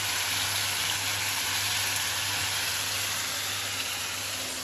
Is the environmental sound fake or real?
real